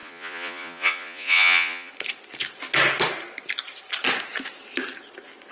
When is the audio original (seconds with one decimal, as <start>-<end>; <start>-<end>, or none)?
1.9-5.5